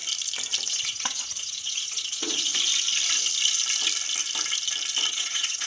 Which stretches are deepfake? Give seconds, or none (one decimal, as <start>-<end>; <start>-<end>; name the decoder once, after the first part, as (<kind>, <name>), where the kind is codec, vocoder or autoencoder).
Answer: 0.7-2.5 (vocoder, Vocos); 5.1-5.7

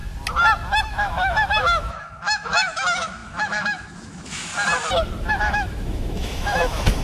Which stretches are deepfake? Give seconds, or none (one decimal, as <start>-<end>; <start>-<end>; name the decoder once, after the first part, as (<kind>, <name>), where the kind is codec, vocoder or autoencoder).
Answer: 0.8-4.5 (autoencoder, DAC-VAE); 5.3-7.0

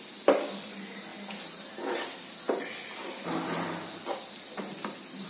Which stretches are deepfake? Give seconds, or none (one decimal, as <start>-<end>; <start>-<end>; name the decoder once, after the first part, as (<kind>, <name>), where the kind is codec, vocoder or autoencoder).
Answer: none

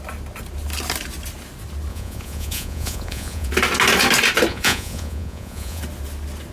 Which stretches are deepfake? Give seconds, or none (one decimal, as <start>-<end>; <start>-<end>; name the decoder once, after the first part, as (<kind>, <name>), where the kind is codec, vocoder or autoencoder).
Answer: 1.9-3.5 (vocoder, Vocos); 4.5-5.8

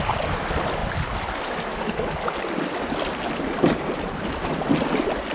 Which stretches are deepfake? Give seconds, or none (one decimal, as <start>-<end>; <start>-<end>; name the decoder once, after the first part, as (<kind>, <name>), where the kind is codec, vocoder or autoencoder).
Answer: none

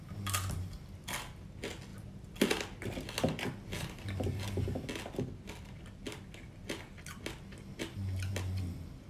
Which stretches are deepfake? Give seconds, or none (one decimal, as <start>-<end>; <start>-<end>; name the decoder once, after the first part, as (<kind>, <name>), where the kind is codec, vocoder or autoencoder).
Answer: none